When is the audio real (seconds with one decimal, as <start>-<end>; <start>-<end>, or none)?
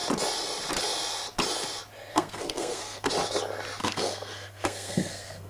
0.0-2.1; 3.1-3.8